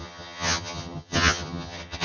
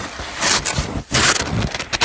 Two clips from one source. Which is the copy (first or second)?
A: first